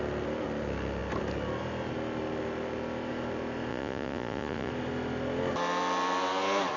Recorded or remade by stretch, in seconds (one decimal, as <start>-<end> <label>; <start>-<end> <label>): 0.0-3.7 recorded; 3.7-4.7 remade; 4.7-6.8 recorded